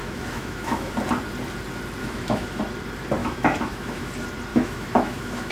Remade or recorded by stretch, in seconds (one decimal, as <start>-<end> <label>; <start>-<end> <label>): 0.0-0.9 remade; 0.9-2.0 recorded; 2.0-2.6 remade; 2.6-3.2 recorded; 3.2-4.1 remade; 4.1-4.5 recorded; 4.5-5.5 remade